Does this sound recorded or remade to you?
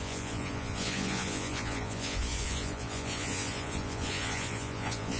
remade